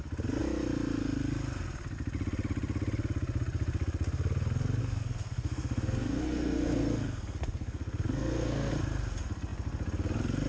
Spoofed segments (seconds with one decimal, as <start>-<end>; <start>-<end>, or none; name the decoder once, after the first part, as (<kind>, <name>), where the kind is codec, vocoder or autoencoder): 4.8-8.7 (codec, SNAC)